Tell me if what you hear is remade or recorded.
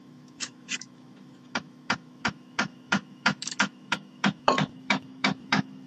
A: remade